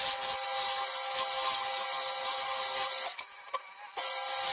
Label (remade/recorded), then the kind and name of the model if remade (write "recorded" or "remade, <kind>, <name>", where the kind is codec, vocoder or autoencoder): recorded